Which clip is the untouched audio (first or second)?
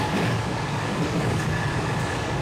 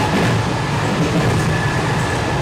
second